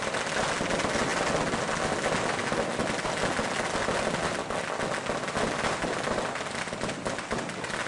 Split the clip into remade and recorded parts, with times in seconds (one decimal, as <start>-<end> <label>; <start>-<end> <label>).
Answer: 0.0-7.9 recorded